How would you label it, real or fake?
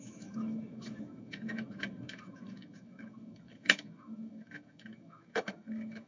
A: fake